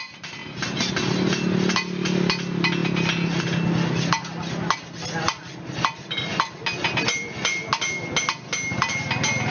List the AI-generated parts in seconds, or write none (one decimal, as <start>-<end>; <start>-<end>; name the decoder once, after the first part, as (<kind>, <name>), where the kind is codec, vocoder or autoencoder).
none